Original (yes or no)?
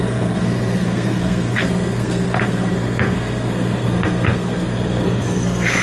no